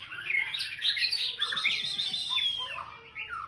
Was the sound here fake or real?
real